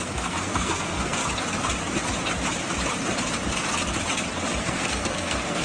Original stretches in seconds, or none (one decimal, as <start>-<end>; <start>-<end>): 1.2-4.6